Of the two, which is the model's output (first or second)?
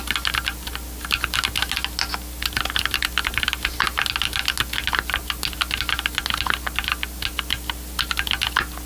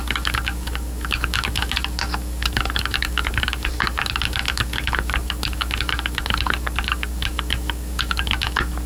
second